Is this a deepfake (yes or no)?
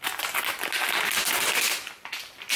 no